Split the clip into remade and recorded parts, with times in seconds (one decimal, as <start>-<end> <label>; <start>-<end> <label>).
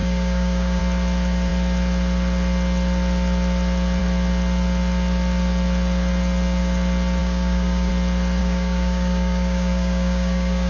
0.0-0.8 remade; 0.8-7.2 recorded; 7.2-7.9 remade; 7.9-8.4 recorded; 8.4-10.7 remade